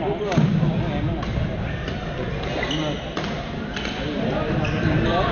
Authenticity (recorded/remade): recorded